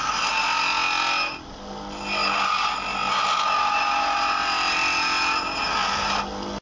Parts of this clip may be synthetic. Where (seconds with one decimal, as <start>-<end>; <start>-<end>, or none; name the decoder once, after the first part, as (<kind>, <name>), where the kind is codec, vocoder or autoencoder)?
none